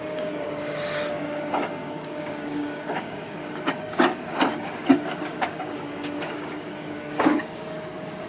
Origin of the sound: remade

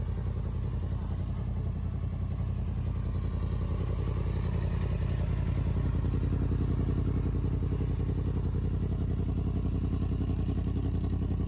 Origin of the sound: recorded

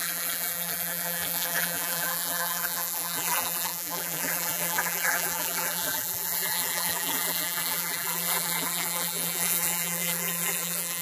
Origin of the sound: remade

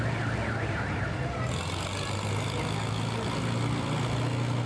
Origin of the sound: recorded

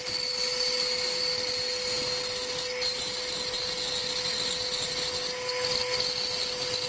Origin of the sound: recorded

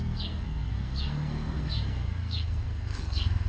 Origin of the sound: remade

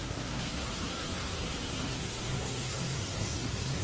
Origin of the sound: remade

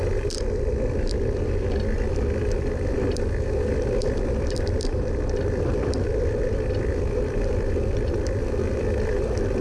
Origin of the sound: remade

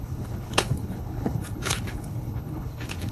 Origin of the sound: remade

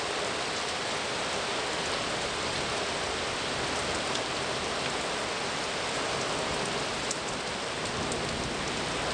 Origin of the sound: recorded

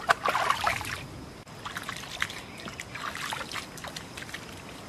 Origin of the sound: recorded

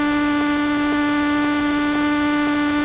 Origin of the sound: recorded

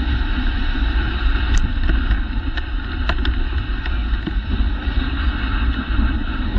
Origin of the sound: recorded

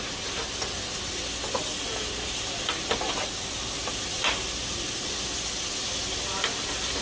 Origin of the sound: recorded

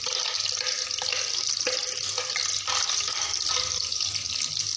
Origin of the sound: recorded